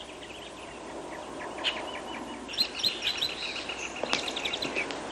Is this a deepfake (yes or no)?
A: no